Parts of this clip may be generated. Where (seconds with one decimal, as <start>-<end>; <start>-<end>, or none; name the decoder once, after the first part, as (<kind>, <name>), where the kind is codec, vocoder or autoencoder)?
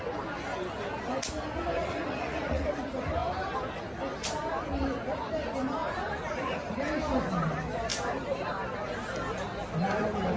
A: 1.8-2.7 (vocoder, Vocos); 5.8-6.8